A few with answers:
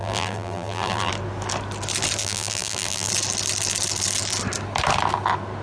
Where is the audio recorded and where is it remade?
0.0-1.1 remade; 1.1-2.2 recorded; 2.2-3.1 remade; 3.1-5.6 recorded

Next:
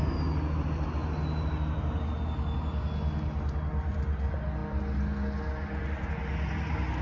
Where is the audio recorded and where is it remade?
0.0-7.0 recorded

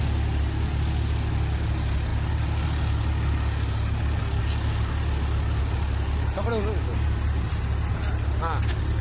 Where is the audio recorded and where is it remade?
0.0-9.0 recorded

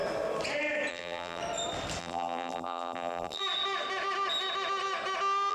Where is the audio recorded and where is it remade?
0.0-0.9 recorded; 0.9-1.4 remade; 1.4-2.0 recorded; 2.0-3.4 remade; 3.4-5.5 recorded

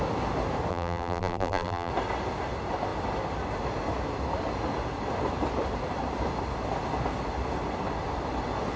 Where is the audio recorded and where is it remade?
0.0-0.7 recorded; 0.7-1.9 remade; 1.9-8.8 recorded

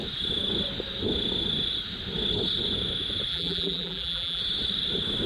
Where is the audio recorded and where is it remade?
0.0-3.3 recorded; 3.3-4.4 remade; 4.4-5.3 recorded